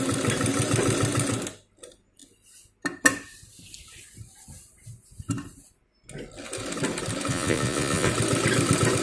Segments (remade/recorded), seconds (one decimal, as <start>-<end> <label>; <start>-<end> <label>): 0.0-7.3 recorded; 7.3-8.1 remade; 8.1-9.0 recorded